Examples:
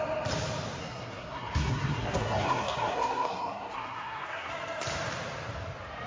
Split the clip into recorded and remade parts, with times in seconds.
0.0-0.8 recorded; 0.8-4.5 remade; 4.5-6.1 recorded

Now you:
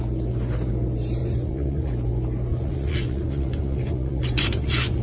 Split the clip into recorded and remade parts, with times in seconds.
0.0-1.2 recorded; 1.2-1.9 remade; 1.9-2.5 recorded; 2.5-5.0 remade

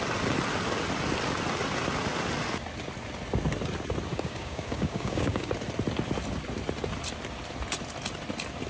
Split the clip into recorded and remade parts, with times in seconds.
0.0-4.1 recorded; 4.1-5.5 remade; 5.5-8.7 recorded

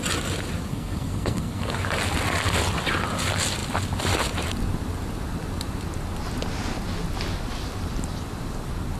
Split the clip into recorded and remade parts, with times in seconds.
0.0-0.7 recorded; 0.7-1.8 remade; 1.8-9.0 recorded

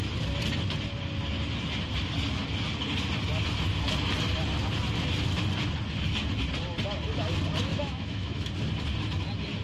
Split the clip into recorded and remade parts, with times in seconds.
0.0-7.7 recorded; 7.7-8.5 remade; 8.5-9.6 recorded

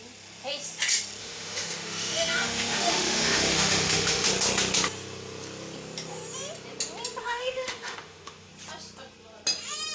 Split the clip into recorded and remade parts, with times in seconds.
0.0-1.2 recorded; 1.2-4.3 remade; 4.3-7.2 recorded; 7.2-8.5 remade; 8.5-9.9 recorded

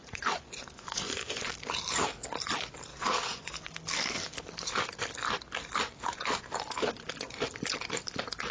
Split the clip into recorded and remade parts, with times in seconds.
0.0-1.5 remade; 1.5-2.9 recorded; 2.9-3.7 remade; 3.7-8.5 recorded